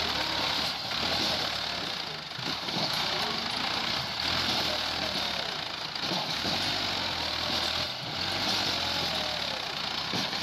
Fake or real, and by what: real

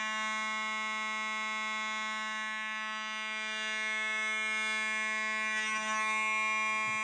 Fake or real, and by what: real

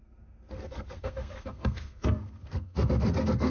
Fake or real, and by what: fake, codec, SNAC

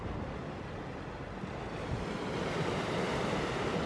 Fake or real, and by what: real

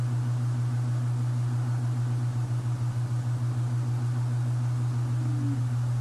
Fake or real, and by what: real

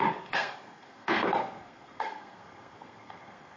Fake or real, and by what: fake, codec, SNAC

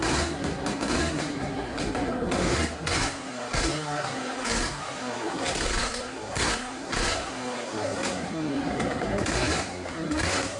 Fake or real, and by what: fake, codec, SNAC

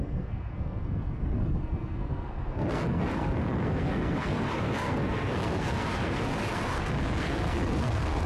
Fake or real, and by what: fake, codec, SNAC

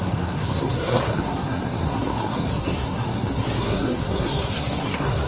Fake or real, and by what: fake, codec, SNAC